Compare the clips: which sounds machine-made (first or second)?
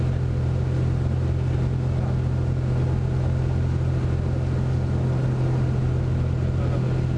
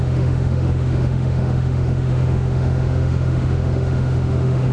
second